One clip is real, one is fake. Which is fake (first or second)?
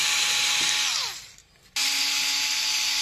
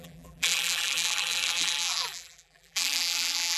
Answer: second